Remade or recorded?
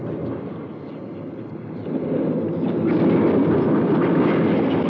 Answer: recorded